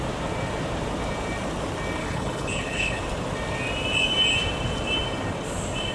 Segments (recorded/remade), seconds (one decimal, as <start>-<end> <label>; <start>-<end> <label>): 0.0-2.0 recorded; 2.0-3.0 remade; 3.0-5.9 recorded